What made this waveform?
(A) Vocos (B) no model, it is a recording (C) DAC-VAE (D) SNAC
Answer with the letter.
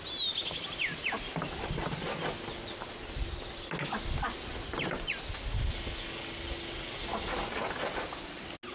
B